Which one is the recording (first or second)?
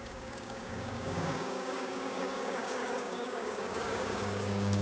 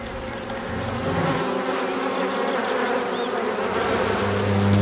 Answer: second